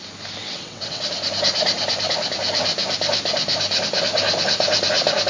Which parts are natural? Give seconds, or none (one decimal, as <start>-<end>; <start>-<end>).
0.0-0.4; 1.0-5.3